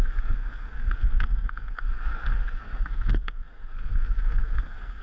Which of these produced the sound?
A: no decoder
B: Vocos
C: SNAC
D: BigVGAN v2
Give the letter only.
C